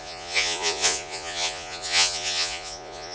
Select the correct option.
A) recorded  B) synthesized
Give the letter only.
B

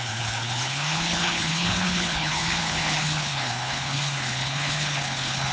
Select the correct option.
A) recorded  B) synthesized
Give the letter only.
B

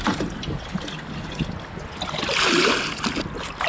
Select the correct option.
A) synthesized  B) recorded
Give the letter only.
B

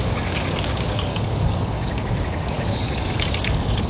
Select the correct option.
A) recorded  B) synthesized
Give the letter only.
B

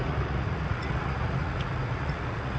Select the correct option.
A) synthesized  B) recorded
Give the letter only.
A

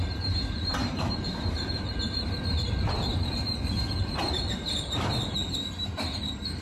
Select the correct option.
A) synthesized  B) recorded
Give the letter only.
A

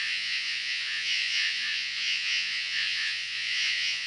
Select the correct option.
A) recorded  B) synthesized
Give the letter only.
B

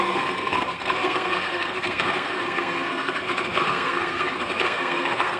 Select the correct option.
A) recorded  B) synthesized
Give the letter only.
B